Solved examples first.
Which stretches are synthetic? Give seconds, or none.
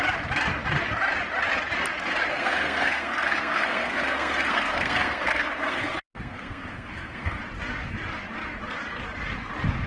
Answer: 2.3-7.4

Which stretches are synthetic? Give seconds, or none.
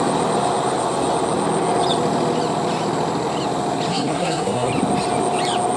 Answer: 3.9-4.7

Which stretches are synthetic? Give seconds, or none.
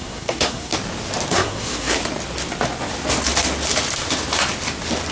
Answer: 0.0-0.7; 1.3-2.0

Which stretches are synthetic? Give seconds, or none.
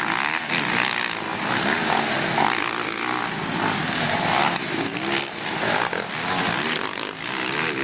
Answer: none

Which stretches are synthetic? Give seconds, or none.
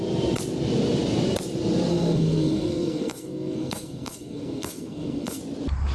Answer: 1.9-5.4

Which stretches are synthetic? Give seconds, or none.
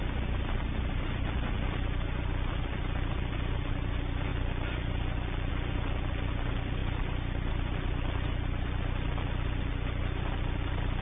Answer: none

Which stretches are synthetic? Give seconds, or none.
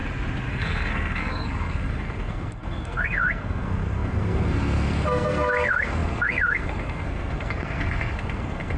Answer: 0.5-8.8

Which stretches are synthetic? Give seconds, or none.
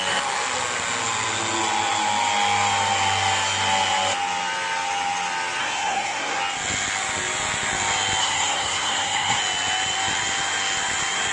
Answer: 5.6-6.4; 8.2-9.4